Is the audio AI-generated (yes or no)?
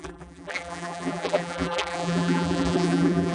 yes